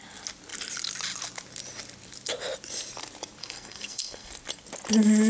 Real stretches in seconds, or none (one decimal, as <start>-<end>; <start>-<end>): 0.0-3.4; 4.3-5.3